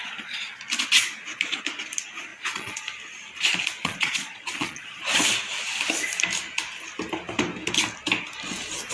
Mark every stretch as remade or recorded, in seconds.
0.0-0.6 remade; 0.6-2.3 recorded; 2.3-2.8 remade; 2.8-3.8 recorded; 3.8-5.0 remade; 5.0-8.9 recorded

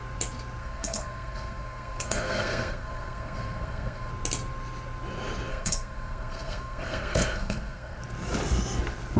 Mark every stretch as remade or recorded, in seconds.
0.0-0.6 recorded; 0.6-4.1 remade; 4.1-5.5 recorded; 5.5-8.0 remade; 8.0-9.2 recorded

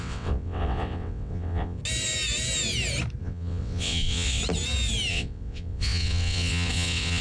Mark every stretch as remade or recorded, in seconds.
0.0-1.8 remade; 1.8-3.2 recorded; 3.2-4.4 remade; 4.4-5.1 recorded; 5.1-7.2 remade

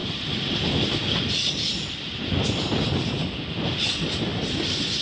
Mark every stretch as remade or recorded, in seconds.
0.0-5.0 recorded

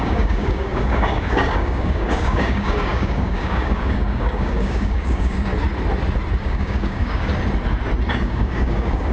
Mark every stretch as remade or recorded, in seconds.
0.0-5.5 remade; 5.5-6.4 recorded; 6.4-7.3 remade; 7.3-8.1 recorded; 8.1-9.1 remade

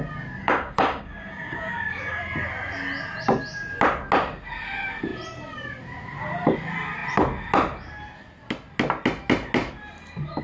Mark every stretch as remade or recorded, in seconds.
0.0-0.4 recorded; 0.4-2.2 remade; 2.2-10.4 recorded